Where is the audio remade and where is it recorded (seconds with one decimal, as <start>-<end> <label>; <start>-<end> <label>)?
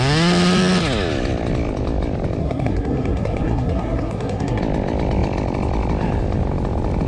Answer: 0.0-2.4 recorded; 2.4-4.6 remade; 4.6-7.1 recorded